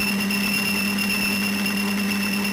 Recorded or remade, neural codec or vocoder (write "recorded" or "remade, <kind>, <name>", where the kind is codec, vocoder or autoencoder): recorded